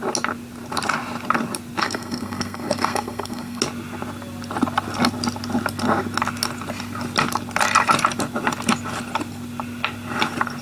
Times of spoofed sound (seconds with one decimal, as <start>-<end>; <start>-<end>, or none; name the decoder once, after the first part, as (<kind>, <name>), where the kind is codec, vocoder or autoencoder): 1.8-3.6 (codec, SNAC)